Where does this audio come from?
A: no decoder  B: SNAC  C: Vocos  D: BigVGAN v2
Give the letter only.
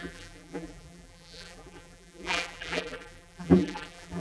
D